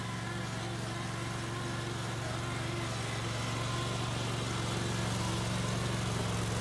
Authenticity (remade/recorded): recorded